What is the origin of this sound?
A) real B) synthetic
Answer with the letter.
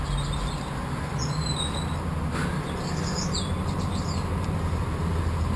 A